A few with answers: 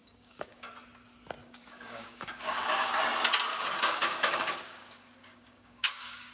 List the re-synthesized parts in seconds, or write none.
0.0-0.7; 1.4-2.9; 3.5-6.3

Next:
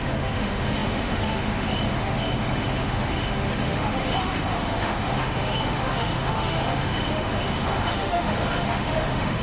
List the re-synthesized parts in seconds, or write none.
0.0-9.4